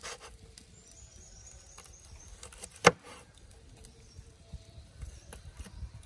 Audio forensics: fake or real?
fake